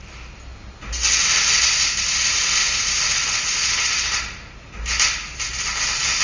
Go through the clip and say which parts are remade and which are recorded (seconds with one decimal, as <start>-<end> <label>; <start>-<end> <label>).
0.0-6.2 recorded